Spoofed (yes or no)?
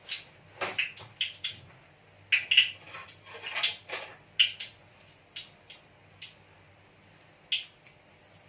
no